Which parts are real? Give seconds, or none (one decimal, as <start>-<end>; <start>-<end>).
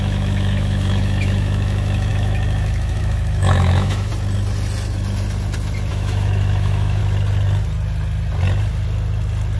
4.1-5.9; 7.0-9.6